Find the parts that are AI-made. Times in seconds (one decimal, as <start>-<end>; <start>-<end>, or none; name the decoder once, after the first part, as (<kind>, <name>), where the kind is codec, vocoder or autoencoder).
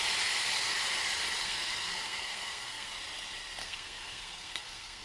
1.4-2.9 (codec, SNAC); 3.6-5.0